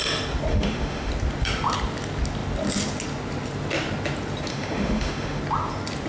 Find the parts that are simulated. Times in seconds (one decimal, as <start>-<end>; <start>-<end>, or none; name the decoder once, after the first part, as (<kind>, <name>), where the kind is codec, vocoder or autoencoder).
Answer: 0.5-1.1 (autoencoder, DAC-VAE); 4.5-5.4